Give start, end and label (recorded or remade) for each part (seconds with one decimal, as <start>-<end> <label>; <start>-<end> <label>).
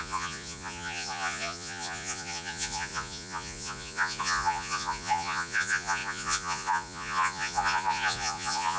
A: 0.0-8.8 remade